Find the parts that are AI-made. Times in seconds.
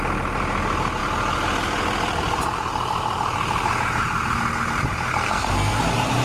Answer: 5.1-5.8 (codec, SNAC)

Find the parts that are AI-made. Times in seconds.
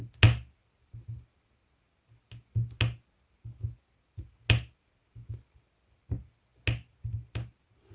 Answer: none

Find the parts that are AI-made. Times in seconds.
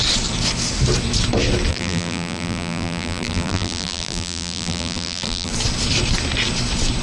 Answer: 1.7-5.5 (vocoder, BigVGAN v2)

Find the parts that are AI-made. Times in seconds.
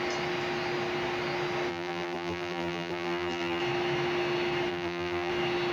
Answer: 1.7-3.6 (vocoder, BigVGAN v2); 4.7-5.3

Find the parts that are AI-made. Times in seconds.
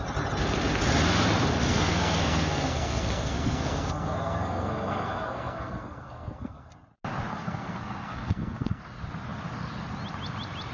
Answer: 1.7-6.7 (codec, SNAC); 7.3-8.8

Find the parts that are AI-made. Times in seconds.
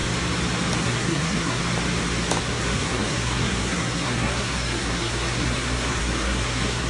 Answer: 0.8-1.6 (codec, SNAC); 2.4-6.9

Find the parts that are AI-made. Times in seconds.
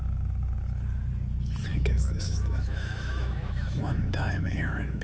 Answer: 1.7-5.0 (autoencoder, DAC-VAE)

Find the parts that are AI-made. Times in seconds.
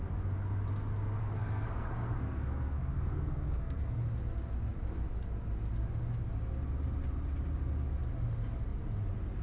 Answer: 1.2-4.0 (codec, SNAC)